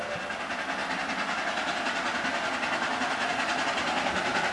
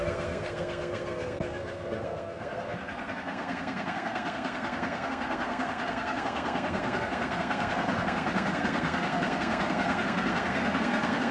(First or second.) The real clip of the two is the first